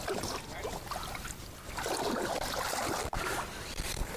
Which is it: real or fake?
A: real